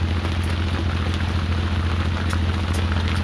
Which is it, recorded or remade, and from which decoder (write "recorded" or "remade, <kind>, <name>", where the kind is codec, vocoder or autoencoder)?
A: recorded